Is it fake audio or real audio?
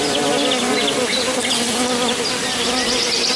real